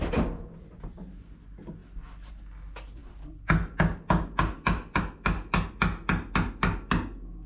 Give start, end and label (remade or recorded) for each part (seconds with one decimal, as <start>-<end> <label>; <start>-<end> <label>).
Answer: 0.0-7.5 recorded